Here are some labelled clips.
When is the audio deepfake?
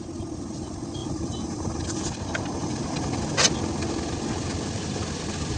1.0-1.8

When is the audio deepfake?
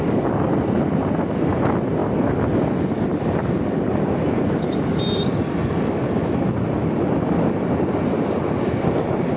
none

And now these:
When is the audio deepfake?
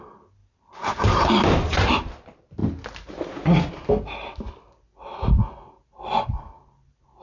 0.4-2.1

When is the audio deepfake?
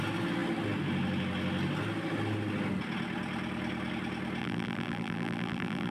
4.4-5.9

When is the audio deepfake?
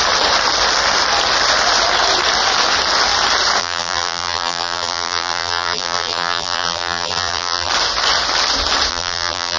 3.6-7.7; 8.9-9.6